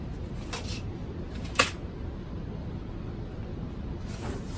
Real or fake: real